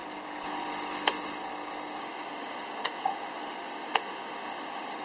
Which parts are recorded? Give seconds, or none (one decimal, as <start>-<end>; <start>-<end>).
0.0-2.0